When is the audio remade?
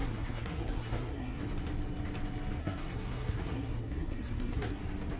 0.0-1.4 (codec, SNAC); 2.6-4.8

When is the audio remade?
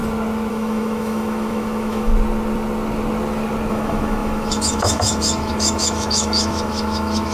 0.5-2.1 (autoencoder, DAC-VAE); 3.7-7.3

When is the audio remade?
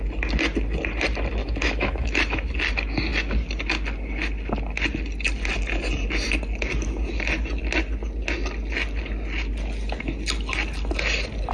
1.4-2.5 (autoencoder, DAC-VAE)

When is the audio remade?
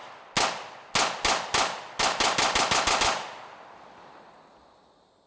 none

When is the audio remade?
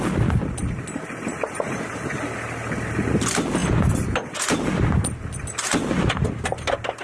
none